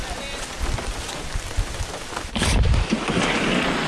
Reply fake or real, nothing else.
real